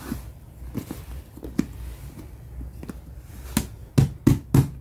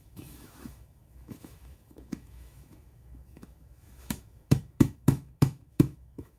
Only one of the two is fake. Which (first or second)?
second